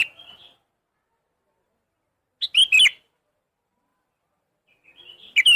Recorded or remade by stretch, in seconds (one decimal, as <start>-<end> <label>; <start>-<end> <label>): 0.0-5.6 recorded